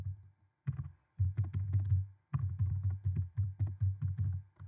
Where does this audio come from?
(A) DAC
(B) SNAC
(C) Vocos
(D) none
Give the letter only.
D